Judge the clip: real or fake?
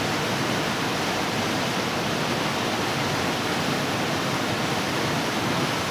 real